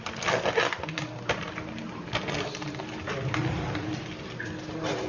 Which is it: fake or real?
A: real